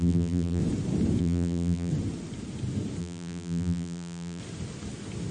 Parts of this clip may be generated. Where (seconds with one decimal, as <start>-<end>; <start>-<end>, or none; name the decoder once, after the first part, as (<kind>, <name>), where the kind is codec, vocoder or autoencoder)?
0.0-0.6 (vocoder, BigVGAN v2); 1.2-1.9; 3.0-4.4